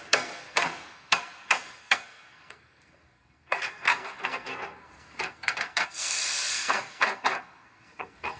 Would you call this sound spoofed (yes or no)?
yes